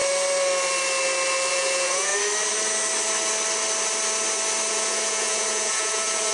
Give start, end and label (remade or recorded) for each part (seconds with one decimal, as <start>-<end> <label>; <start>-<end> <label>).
0.0-1.5 recorded; 1.5-2.1 remade; 2.1-4.7 recorded; 4.7-6.3 remade